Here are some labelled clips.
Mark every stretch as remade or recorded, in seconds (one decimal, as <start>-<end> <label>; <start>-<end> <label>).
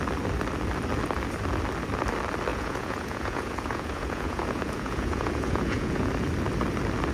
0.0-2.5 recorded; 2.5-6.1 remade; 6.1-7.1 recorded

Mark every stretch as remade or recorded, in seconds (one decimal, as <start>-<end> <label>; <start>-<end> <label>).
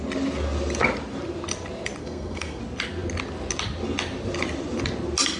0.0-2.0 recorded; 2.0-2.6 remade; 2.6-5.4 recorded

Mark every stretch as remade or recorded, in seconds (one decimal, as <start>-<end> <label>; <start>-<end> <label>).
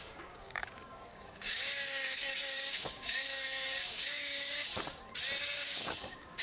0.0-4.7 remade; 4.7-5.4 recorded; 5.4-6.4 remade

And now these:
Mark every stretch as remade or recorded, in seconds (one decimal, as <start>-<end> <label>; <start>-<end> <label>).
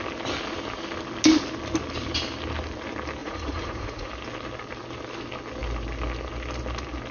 0.0-3.2 recorded; 3.2-4.1 remade; 4.1-7.1 recorded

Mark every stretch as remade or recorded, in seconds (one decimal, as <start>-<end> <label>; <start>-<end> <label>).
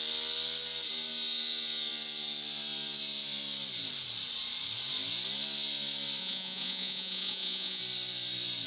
0.0-6.2 recorded; 6.2-7.8 remade; 7.8-8.7 recorded